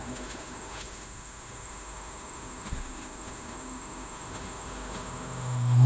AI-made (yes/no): yes